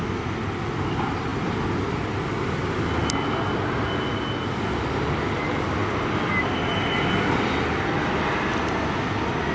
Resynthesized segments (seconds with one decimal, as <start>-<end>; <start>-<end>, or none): none